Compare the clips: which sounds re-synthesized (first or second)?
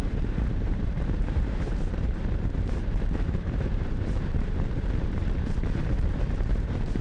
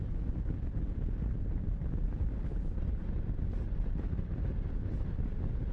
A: first